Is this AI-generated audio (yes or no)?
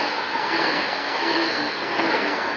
yes